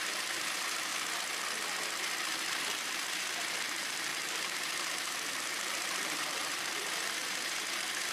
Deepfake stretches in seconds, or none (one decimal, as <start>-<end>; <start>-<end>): 0.0-0.9; 2.6-8.1